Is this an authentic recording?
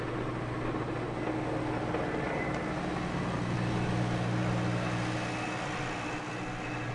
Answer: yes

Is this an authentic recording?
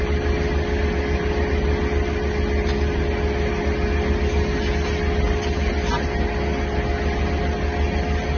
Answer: yes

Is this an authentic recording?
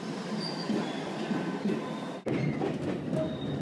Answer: yes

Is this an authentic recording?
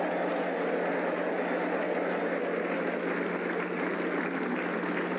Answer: yes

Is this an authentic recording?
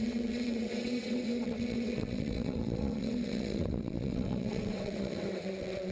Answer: no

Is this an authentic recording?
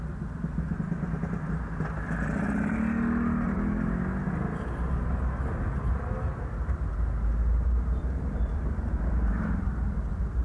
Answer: yes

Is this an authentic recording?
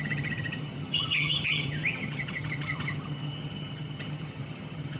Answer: no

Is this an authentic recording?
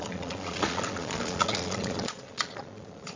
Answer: no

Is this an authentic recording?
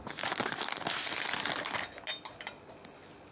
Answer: yes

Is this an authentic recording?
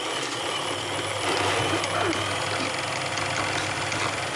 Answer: yes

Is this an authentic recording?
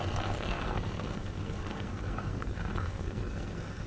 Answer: no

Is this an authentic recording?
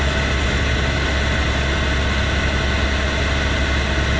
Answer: yes